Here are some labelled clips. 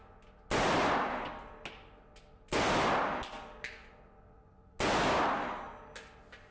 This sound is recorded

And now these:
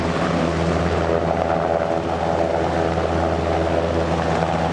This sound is recorded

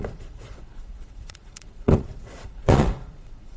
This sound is remade